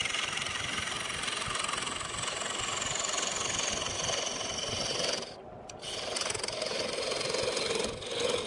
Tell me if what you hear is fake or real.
real